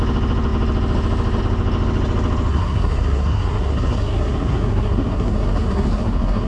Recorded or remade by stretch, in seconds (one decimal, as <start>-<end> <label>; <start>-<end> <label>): 0.0-2.5 recorded; 2.5-6.5 remade